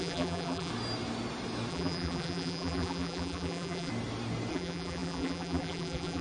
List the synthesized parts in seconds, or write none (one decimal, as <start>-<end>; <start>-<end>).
0.0-0.7; 1.7-3.9; 4.5-6.2